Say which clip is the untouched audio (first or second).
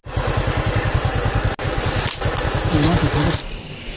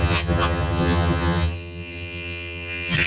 first